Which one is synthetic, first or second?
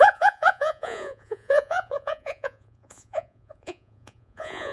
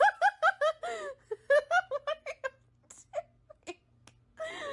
first